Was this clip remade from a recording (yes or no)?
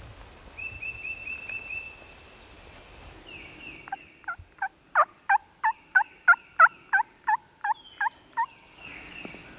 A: no